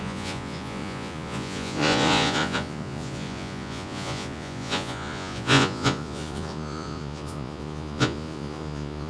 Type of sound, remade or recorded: remade